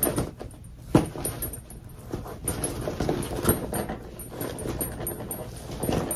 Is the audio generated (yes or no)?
no